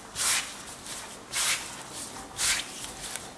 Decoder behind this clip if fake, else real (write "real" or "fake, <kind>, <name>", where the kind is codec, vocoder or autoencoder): real